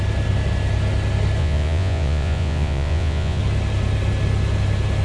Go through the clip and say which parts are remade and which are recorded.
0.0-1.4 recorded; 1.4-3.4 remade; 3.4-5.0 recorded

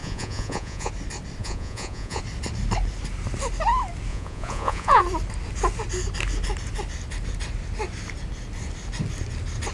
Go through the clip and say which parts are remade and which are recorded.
0.0-0.9 remade; 0.9-1.4 recorded; 1.4-2.2 remade; 2.2-4.1 recorded; 4.1-5.0 remade; 5.0-9.7 recorded

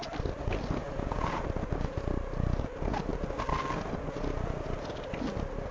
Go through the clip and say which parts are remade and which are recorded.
0.0-0.8 recorded; 0.8-1.4 remade; 1.4-5.7 recorded

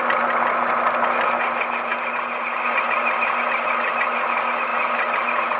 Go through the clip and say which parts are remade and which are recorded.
0.0-5.6 recorded

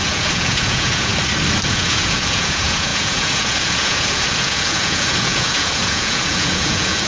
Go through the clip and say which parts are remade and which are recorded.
0.0-1.1 remade; 1.1-1.7 recorded; 1.7-7.1 remade